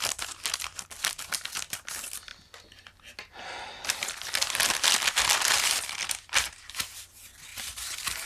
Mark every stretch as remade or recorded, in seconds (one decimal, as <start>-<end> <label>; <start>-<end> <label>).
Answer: 0.0-8.3 recorded